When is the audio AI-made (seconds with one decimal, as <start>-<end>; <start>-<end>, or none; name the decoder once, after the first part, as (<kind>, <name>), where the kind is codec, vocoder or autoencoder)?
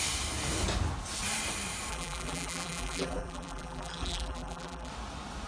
1.9-4.9 (vocoder, BigVGAN v2)